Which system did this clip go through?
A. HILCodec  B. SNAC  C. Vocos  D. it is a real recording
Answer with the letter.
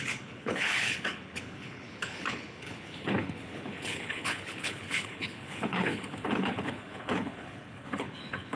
A